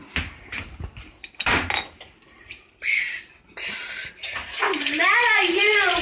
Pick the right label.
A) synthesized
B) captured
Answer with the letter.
B